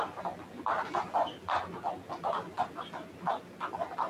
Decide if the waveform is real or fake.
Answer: real